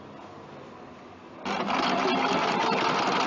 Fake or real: real